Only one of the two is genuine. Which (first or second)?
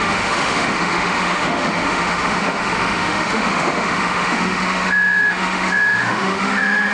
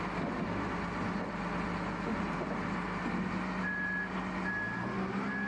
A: second